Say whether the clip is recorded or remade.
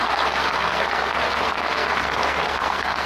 remade